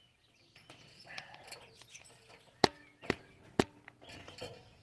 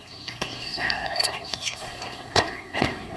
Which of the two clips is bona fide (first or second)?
first